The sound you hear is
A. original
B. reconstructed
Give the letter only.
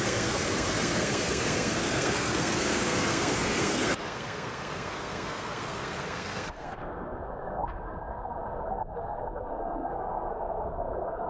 B